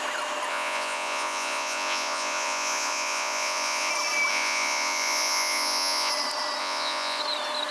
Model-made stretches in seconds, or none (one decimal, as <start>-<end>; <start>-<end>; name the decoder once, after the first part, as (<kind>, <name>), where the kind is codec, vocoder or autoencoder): 0.5-3.9 (vocoder, Vocos); 4.3-6.1; 6.6-7.2